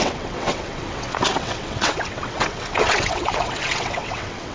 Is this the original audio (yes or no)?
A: no